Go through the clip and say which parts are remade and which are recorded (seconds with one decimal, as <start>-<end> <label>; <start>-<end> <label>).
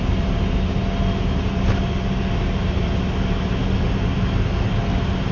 0.0-5.3 recorded